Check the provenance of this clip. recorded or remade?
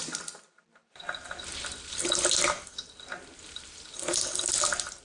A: recorded